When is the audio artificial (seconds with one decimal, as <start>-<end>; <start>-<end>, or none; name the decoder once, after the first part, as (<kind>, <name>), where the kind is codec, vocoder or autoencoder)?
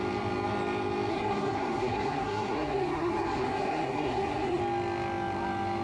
1.1-4.6 (codec, SNAC)